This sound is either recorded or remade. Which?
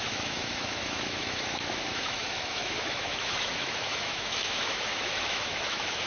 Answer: remade